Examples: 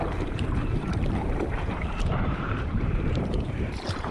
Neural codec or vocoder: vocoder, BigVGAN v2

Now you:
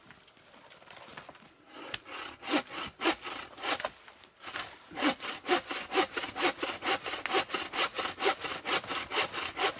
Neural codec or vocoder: none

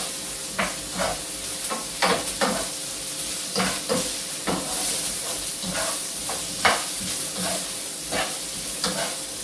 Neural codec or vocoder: none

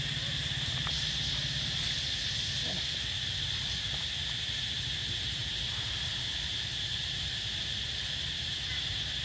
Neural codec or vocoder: none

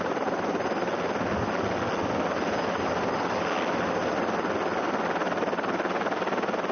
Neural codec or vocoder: none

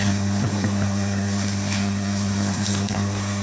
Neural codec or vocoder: codec, SNAC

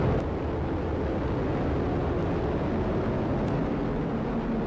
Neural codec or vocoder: none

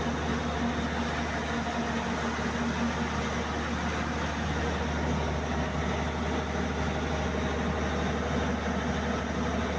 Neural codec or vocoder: none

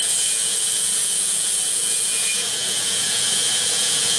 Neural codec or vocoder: vocoder, Vocos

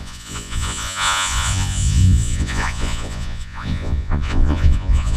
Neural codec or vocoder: vocoder, Vocos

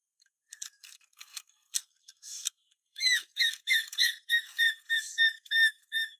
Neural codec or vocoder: codec, SNAC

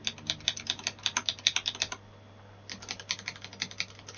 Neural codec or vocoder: none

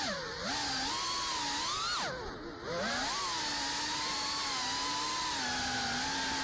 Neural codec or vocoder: none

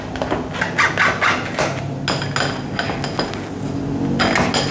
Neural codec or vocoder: none